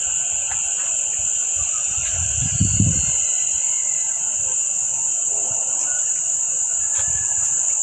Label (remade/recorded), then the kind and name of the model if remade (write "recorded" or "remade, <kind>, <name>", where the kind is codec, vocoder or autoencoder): recorded